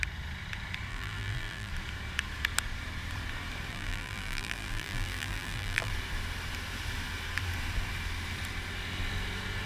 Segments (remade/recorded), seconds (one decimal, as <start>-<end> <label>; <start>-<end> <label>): 0.0-0.9 recorded; 0.9-1.7 remade; 1.7-3.7 recorded; 3.7-5.9 remade; 5.9-9.7 recorded

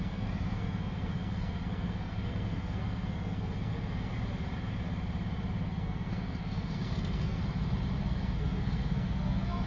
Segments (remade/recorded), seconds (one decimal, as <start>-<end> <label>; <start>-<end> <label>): 0.0-4.1 remade; 4.1-5.7 recorded; 5.7-7.4 remade; 7.4-8.0 recorded; 8.0-9.7 remade

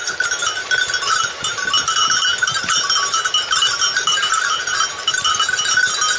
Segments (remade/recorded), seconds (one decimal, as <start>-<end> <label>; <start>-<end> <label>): 0.0-6.2 recorded

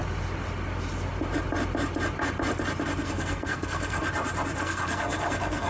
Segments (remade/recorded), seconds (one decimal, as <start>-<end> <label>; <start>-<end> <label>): 0.0-3.0 recorded; 3.0-4.0 remade; 4.0-4.6 recorded; 4.6-5.7 remade

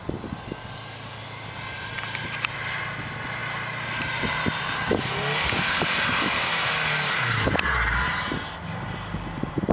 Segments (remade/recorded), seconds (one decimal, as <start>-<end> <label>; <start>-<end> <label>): 0.0-9.7 recorded

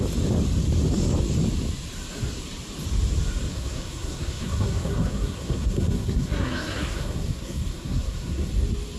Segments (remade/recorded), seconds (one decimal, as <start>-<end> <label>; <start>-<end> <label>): 0.0-3.5 recorded; 3.5-8.5 remade; 8.5-9.0 recorded

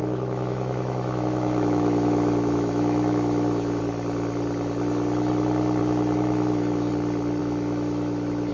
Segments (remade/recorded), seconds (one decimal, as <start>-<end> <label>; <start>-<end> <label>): 0.0-3.8 remade; 3.8-5.8 recorded; 5.8-6.9 remade; 6.9-7.4 recorded; 7.4-8.5 remade

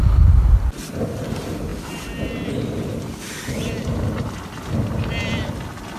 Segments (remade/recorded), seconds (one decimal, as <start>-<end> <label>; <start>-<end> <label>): 0.0-6.0 recorded